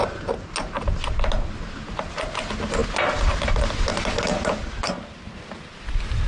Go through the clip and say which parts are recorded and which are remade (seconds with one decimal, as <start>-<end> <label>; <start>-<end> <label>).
0.0-6.3 recorded

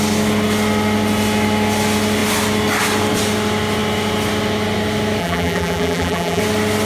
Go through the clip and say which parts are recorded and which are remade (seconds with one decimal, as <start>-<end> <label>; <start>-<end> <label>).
0.0-5.2 recorded; 5.2-6.4 remade; 6.4-6.9 recorded

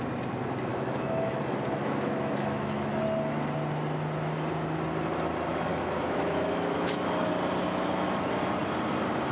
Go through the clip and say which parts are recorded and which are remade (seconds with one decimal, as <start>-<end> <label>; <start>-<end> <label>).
0.0-0.7 recorded; 0.7-1.4 remade; 1.4-1.8 recorded; 1.8-3.0 remade; 3.0-5.7 recorded; 5.7-7.3 remade; 7.3-9.3 recorded

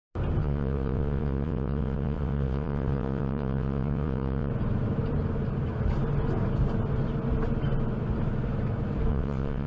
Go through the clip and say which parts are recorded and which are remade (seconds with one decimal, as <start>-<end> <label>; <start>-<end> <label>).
0.0-0.4 recorded; 0.4-4.5 remade; 4.5-9.1 recorded; 9.1-9.7 remade

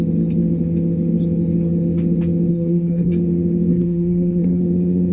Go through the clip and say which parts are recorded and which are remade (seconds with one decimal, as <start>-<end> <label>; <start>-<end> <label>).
0.0-2.5 recorded; 2.5-3.1 remade; 3.1-3.7 recorded; 3.7-4.6 remade; 4.6-5.1 recorded

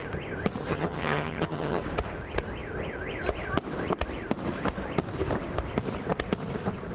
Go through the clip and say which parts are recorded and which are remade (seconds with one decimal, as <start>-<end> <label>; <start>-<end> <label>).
0.0-0.7 recorded; 0.7-1.8 remade; 1.8-6.9 recorded

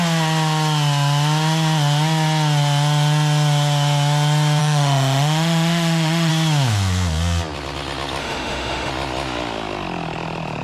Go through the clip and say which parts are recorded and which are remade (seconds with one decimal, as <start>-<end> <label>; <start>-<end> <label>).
0.0-4.6 recorded; 4.6-6.3 remade; 6.3-8.2 recorded; 8.2-8.9 remade; 8.9-10.6 recorded